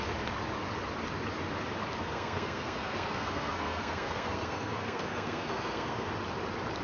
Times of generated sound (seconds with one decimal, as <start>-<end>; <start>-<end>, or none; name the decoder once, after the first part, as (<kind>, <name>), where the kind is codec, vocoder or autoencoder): 2.0-6.1 (codec, SNAC)